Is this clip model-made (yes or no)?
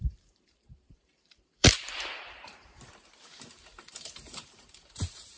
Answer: yes